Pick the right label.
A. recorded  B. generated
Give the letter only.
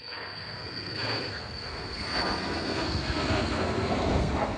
B